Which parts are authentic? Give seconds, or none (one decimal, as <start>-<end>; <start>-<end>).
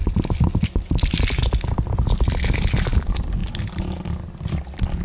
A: 0.0-5.0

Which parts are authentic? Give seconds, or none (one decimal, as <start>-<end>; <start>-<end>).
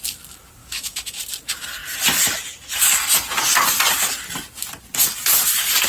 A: 0.0-0.6; 1.2-5.9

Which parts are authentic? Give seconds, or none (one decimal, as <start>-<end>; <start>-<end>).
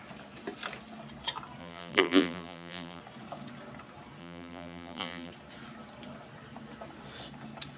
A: 0.0-1.6; 3.0-4.2; 5.3-7.8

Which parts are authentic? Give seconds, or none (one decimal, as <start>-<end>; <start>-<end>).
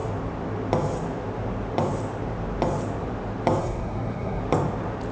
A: 0.0-3.6; 4.4-5.1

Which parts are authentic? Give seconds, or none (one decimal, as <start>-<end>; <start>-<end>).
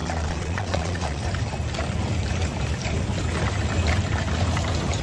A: 1.2-5.0